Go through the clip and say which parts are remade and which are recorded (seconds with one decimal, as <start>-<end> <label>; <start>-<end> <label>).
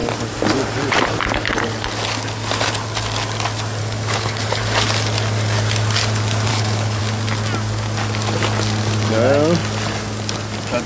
0.0-3.8 recorded; 3.8-4.6 remade; 4.6-6.5 recorded; 6.5-7.0 remade; 7.0-10.9 recorded